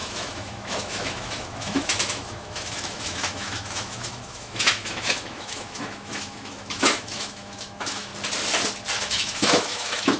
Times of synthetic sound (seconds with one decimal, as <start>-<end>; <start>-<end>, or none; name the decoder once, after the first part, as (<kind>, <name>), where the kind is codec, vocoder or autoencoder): 0.0-8.1 (autoencoder, DAC-VAE); 9.0-10.2